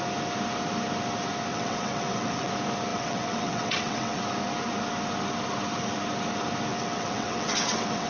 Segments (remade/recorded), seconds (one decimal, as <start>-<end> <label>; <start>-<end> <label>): 0.0-1.5 recorded; 1.5-2.5 remade; 2.5-2.9 recorded; 2.9-4.2 remade; 4.2-6.7 recorded; 6.7-8.1 remade